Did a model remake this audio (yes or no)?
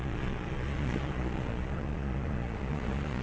yes